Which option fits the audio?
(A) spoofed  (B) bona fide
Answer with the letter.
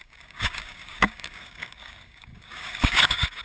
A